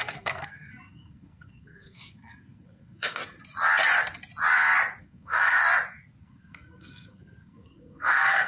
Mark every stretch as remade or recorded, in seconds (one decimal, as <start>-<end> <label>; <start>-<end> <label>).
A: 0.0-3.2 remade; 3.2-5.0 recorded; 5.0-5.6 remade; 5.6-6.2 recorded; 6.2-8.5 remade

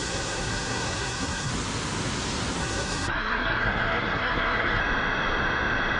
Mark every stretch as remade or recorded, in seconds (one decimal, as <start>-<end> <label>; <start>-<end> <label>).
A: 0.0-1.5 remade; 1.5-2.6 recorded; 2.6-4.8 remade; 4.8-6.0 recorded